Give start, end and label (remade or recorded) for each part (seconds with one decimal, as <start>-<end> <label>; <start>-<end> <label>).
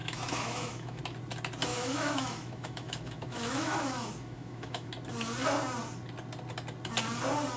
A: 0.0-1.0 remade; 1.0-1.7 recorded; 1.7-4.9 remade; 4.9-7.6 recorded